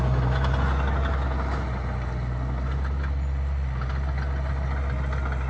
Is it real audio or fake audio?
real